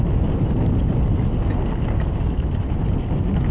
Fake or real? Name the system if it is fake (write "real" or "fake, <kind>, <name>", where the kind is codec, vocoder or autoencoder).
real